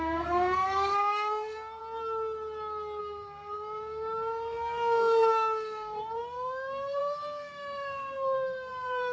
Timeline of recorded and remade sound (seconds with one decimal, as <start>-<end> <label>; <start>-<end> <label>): 0.0-1.8 remade; 1.8-3.0 recorded; 3.0-9.1 remade

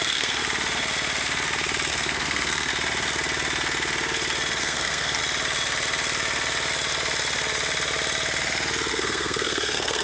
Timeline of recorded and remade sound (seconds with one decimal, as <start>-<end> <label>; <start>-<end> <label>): 0.0-0.4 remade; 0.4-1.9 recorded; 1.9-2.7 remade; 2.7-4.6 recorded; 4.6-5.2 remade; 5.2-8.9 recorded; 8.9-10.0 remade

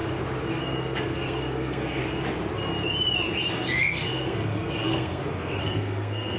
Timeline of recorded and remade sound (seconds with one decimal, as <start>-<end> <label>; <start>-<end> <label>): 0.0-0.5 recorded; 0.5-2.0 remade; 2.0-3.5 recorded; 3.5-6.4 remade

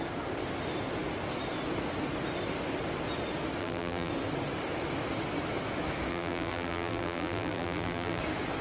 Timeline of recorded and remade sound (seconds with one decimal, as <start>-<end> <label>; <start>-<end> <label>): 0.0-3.6 recorded; 3.6-4.1 remade; 4.1-6.1 recorded; 6.1-8.2 remade; 8.2-8.6 recorded

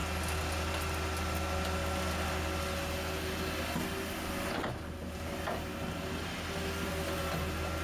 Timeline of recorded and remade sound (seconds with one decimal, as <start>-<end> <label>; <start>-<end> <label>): 0.0-7.8 recorded

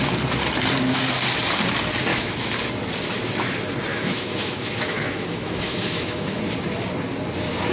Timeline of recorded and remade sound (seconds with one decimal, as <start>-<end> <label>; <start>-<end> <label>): 0.0-2.1 recorded; 2.1-2.6 remade; 2.6-3.9 recorded; 3.9-6.4 remade; 6.4-7.7 recorded

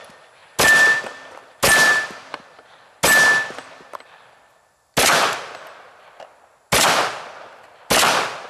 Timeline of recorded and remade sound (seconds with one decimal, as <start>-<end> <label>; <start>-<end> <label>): 0.0-8.5 recorded